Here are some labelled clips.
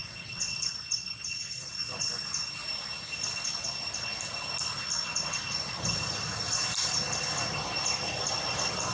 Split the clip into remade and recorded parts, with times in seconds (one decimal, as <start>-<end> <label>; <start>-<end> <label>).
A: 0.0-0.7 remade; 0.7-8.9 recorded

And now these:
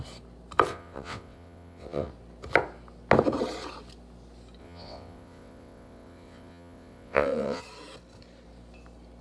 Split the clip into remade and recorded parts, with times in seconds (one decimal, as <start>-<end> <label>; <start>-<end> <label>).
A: 0.0-0.7 recorded; 0.7-2.1 remade; 2.1-4.6 recorded; 4.6-7.6 remade; 7.6-9.2 recorded

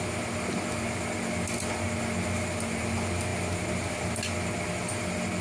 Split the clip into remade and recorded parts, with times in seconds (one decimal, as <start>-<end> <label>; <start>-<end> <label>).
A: 0.0-5.4 recorded